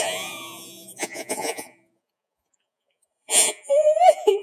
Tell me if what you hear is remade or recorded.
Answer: remade